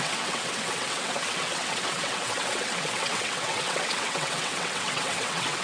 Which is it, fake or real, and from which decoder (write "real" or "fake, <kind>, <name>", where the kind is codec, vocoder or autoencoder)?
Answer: fake, vocoder, WaveNeXt